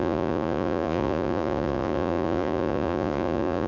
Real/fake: fake